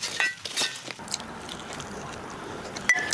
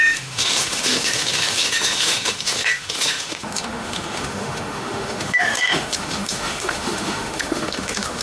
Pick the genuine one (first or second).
first